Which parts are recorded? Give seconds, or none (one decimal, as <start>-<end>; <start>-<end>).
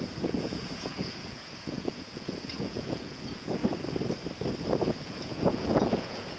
3.6-4.9